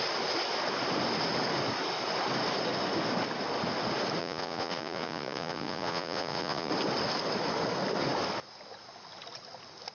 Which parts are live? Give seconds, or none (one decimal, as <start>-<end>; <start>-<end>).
0.0-4.2; 6.7-9.9